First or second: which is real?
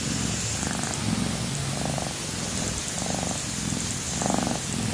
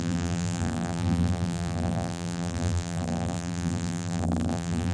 first